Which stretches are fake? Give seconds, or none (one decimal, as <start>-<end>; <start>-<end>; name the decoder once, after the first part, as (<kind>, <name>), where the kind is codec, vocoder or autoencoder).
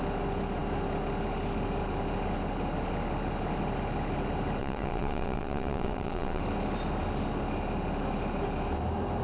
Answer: 4.6-6.4 (vocoder, WaveNeXt)